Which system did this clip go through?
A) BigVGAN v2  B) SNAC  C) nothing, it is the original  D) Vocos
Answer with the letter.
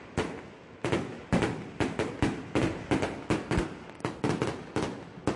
C